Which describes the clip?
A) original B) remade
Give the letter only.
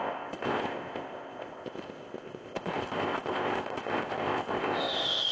B